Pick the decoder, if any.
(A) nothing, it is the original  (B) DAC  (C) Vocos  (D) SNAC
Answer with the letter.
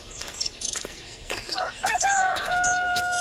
D